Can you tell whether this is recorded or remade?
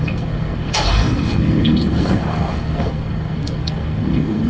remade